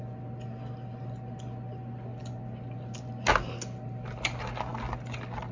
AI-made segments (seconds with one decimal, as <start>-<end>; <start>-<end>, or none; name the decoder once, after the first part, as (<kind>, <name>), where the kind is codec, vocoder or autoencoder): none